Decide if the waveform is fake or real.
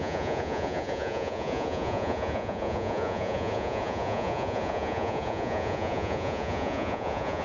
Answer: fake